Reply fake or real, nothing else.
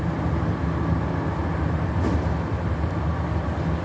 real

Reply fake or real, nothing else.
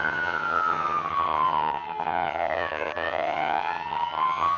fake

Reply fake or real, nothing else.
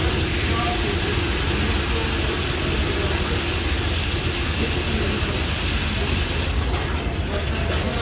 real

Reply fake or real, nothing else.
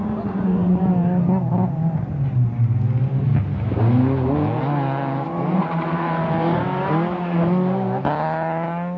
real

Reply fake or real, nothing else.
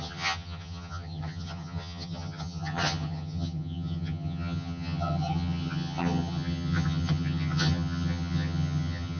fake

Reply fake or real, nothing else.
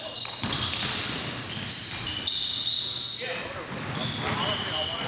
real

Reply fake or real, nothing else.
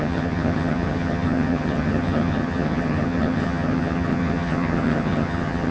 fake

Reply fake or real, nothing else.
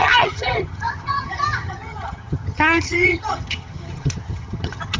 fake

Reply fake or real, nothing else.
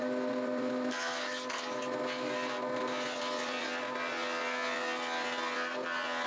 real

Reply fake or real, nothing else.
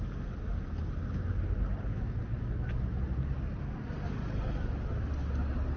real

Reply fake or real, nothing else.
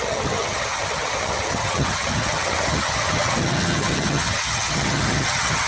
fake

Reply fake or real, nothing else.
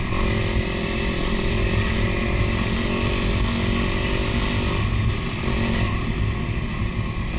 real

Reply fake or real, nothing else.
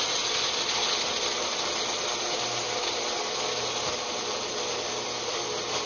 real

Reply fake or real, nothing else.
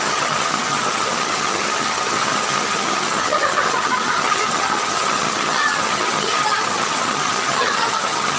fake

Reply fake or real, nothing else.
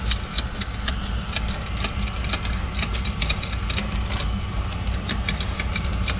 real